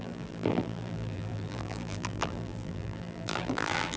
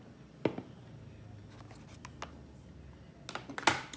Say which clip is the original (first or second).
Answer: second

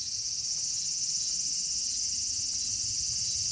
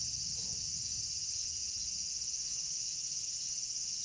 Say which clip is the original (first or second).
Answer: first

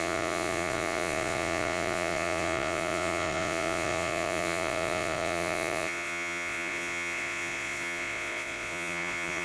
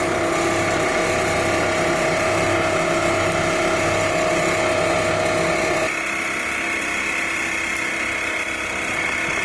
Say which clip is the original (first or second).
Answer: second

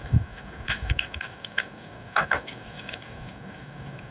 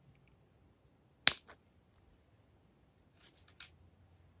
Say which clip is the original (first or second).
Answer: second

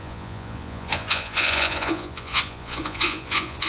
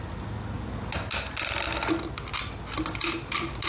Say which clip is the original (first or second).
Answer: second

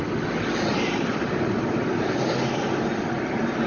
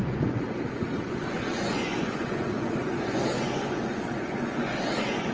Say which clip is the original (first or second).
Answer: first